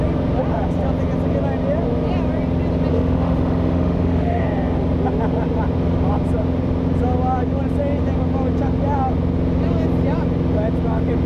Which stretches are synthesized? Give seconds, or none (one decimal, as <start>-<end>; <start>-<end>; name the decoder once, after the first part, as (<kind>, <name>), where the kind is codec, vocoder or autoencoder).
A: 2.9-4.4 (autoencoder, DAC-VAE)